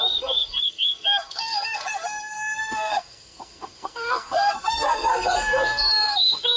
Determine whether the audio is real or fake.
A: fake